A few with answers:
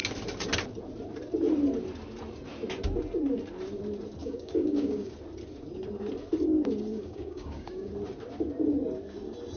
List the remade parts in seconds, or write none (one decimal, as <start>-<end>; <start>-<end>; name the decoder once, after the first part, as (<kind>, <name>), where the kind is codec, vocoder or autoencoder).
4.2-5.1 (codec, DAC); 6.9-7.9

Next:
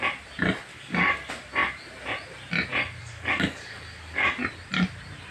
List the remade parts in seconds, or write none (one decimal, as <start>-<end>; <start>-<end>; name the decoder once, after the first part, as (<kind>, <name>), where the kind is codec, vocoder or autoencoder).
0.7-1.3 (codec, DAC); 3.0-4.3

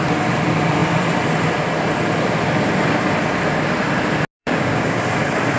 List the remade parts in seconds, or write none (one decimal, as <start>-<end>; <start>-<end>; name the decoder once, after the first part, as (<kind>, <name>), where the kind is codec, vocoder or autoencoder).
4.4-5.0 (codec, DAC)